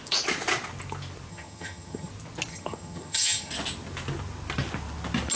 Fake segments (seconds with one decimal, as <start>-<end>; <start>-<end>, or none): 1.3-2.1; 2.5-3.5